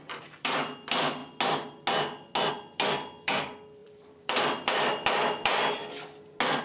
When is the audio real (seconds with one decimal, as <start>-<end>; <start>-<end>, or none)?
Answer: 1.2-2.5; 5.8-6.6